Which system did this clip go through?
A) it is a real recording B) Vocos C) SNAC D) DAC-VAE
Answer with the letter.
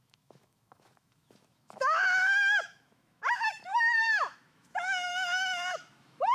D